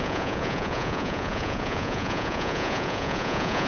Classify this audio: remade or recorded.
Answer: remade